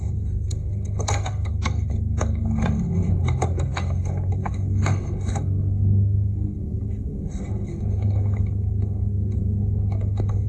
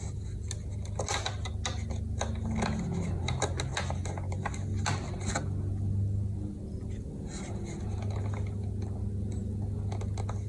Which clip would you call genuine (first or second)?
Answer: second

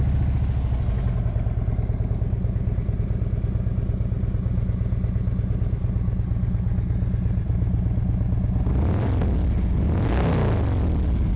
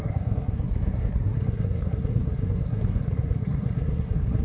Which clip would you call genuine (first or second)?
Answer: first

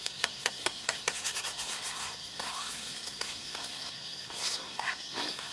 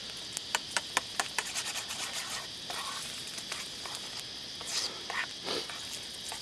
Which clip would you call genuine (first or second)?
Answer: second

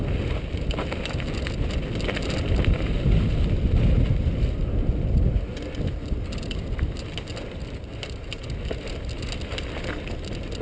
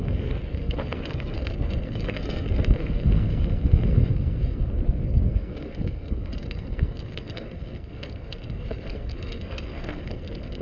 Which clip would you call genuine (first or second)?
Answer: first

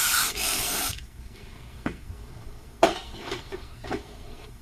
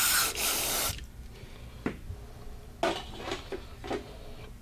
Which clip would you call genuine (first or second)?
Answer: second